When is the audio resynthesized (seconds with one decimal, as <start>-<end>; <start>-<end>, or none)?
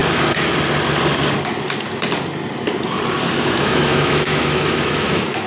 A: 3.3-5.5